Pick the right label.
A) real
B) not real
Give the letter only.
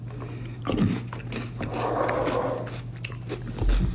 A